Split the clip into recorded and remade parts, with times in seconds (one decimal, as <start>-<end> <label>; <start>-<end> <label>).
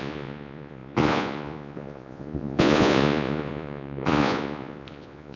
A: 0.0-5.4 remade